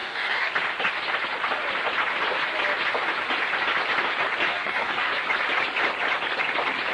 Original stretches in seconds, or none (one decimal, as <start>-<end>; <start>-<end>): 0.5-4.5; 5.1-6.9